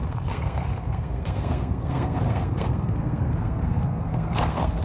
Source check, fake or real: fake